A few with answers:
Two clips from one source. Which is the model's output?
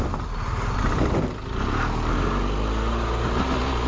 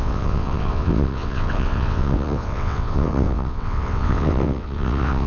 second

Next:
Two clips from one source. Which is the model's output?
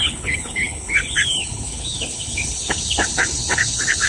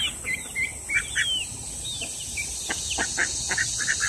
first